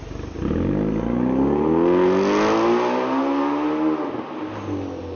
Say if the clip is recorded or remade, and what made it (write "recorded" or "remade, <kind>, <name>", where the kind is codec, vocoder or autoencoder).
recorded